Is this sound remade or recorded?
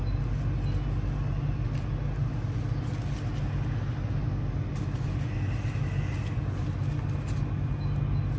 recorded